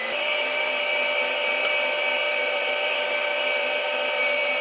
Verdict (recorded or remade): remade